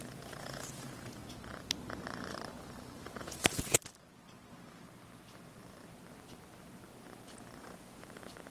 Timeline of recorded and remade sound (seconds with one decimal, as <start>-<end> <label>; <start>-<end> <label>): 0.0-1.2 remade; 1.2-3.2 recorded; 3.2-3.8 remade; 3.8-7.6 recorded; 7.6-8.5 remade